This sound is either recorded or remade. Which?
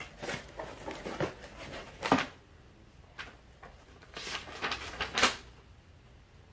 recorded